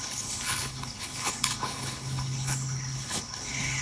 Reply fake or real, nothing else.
fake